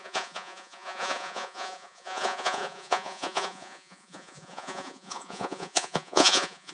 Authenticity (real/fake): fake